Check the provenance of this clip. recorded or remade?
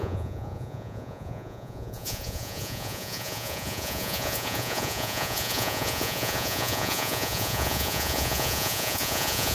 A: remade